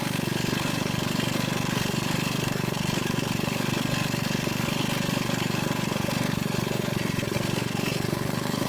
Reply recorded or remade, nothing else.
remade